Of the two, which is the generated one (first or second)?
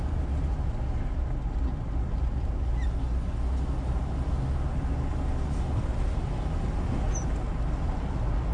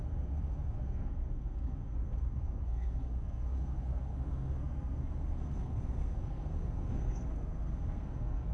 second